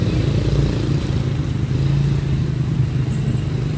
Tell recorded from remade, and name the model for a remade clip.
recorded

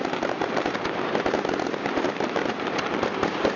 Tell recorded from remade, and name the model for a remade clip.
remade, vocoder, BigVGAN v2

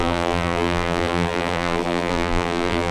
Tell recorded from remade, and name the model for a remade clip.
remade, vocoder, BigVGAN v2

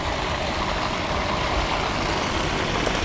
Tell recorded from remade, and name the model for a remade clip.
recorded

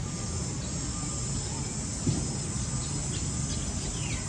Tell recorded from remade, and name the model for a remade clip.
recorded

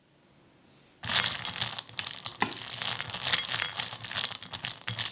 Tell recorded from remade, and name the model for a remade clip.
recorded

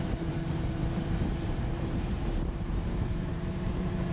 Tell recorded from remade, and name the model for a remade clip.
remade, vocoder, BigVGAN v2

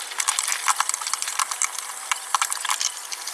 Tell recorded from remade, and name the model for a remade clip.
recorded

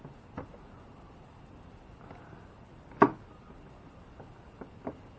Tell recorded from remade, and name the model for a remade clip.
recorded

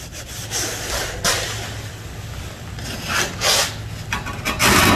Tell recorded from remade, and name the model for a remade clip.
recorded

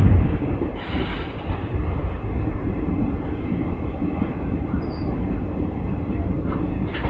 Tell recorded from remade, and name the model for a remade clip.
remade, vocoder, BigVGAN v2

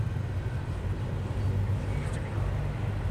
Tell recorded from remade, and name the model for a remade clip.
recorded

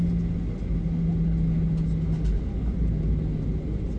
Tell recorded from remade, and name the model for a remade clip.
recorded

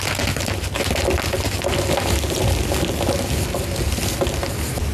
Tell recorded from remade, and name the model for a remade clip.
recorded